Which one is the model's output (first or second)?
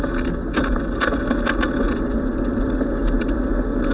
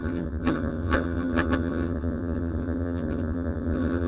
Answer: second